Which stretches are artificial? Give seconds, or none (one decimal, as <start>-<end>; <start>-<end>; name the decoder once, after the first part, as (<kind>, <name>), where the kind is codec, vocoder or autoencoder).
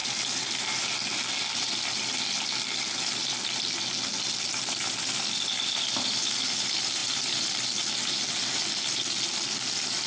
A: none